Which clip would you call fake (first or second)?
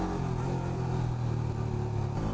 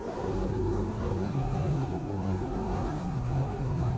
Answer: second